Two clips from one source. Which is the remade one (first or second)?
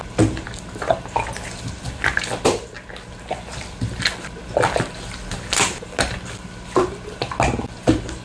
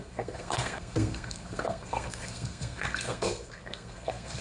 second